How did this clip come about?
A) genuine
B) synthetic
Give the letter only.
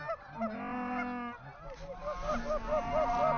A